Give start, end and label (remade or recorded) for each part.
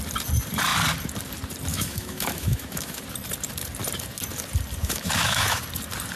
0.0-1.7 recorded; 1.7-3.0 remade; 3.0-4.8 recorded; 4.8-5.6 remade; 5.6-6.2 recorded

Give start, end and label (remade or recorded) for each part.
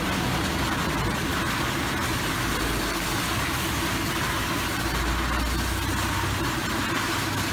0.0-7.5 recorded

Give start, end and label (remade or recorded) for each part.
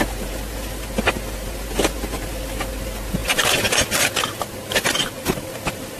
0.0-6.0 recorded